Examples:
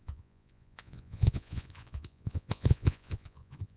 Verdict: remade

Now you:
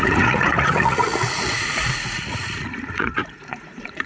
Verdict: remade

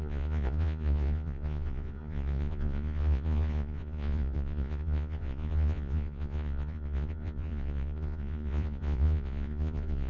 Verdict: remade